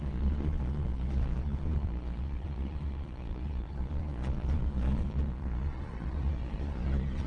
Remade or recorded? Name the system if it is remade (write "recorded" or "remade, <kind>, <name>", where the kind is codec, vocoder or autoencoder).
remade, vocoder, Vocos